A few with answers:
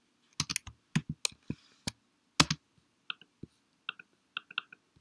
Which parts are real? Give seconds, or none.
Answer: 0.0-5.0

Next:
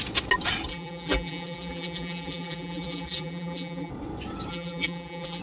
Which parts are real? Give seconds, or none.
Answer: 0.0-0.7; 3.9-4.5

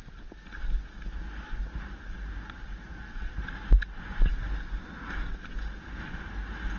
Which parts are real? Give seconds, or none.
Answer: 0.0-6.8

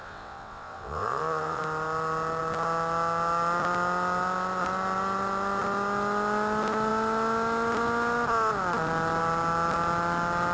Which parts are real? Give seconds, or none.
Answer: 1.6-10.5